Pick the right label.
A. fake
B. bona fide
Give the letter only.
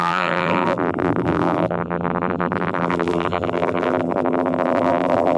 A